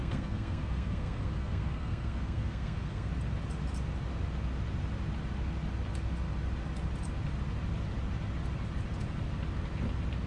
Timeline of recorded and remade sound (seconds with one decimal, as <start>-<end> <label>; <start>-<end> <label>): 0.0-3.1 remade; 3.1-10.3 recorded